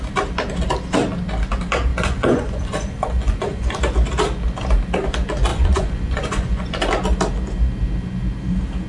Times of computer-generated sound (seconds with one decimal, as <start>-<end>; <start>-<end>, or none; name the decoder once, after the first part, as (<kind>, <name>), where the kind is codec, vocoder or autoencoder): 1.9-3.8 (vocoder, Vocos); 5.5-6.9